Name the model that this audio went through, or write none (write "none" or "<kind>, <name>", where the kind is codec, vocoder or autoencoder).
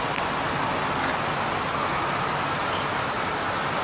none